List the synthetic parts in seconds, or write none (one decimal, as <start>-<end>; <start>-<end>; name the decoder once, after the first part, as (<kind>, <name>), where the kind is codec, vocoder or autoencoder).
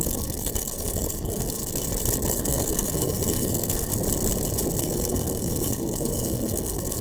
0.0-1.6 (codec, SNAC); 2.3-3.9; 4.8-7.0